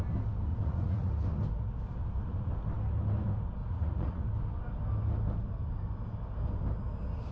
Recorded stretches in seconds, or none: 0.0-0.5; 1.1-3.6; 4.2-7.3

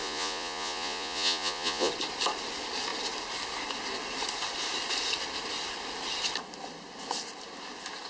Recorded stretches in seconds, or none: 1.9-8.1

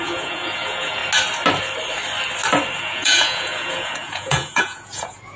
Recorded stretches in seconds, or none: 1.0-2.8

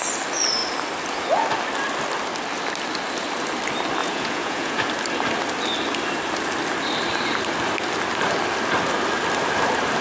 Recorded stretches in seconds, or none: 0.0-4.0; 4.9-10.0

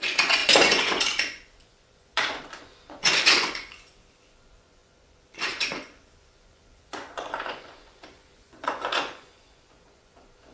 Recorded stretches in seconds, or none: none

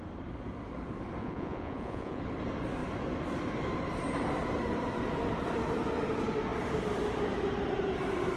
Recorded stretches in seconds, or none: 0.0-1.2; 2.2-8.4